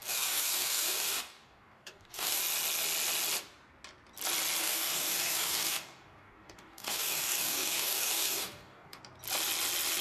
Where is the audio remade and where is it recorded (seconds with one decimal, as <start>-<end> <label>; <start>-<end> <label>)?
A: 0.0-2.4 remade; 2.4-4.6 recorded; 4.6-9.0 remade; 9.0-10.0 recorded